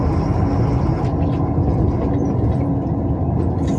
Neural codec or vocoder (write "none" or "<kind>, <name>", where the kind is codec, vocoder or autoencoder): none